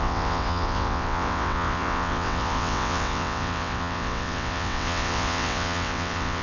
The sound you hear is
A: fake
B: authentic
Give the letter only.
A